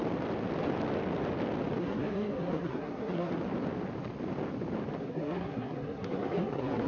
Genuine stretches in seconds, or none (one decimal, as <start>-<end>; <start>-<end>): 0.0-1.8; 3.3-5.0